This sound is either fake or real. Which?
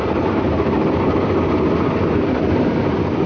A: real